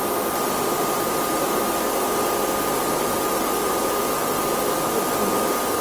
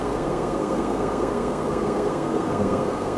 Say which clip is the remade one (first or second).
second